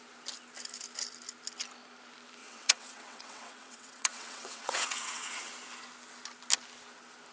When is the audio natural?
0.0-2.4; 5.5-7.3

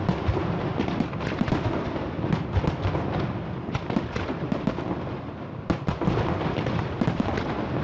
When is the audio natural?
0.4-1.0

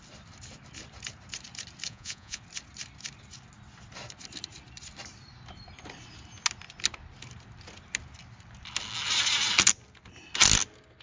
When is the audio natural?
0.0-1.9; 2.4-11.0

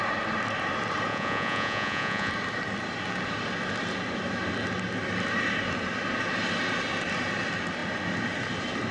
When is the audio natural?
0.0-1.1; 2.3-8.9